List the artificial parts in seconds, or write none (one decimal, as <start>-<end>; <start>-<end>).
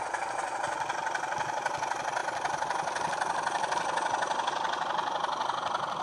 none